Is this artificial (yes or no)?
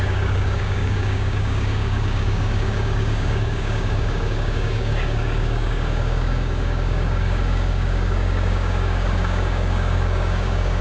yes